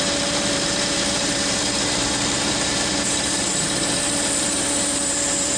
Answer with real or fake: fake